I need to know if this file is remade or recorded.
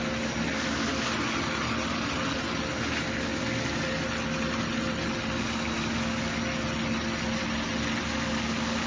recorded